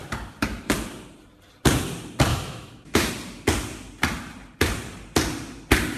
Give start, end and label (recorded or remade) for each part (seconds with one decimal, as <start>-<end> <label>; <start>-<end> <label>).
0.0-2.3 recorded; 2.3-3.1 remade; 3.1-6.0 recorded